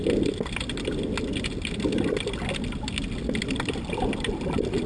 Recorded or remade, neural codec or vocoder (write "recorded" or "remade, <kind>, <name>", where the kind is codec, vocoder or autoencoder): recorded